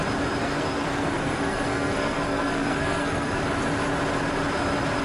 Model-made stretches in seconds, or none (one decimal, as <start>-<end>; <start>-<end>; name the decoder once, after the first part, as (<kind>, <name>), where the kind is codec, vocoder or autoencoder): 0.4-3.4 (codec, SNAC)